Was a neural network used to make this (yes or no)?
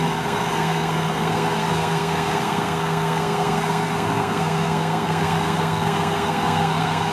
yes